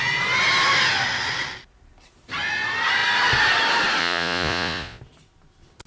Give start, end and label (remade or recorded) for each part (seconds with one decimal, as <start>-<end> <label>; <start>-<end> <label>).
0.0-4.0 recorded; 4.0-5.0 remade; 5.0-5.9 recorded